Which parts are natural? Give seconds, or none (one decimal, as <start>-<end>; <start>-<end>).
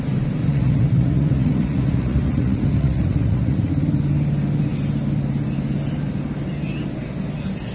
0.0-0.4; 3.7-7.7